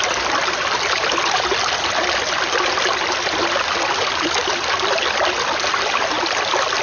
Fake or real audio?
real